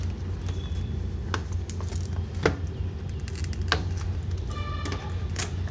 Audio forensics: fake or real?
real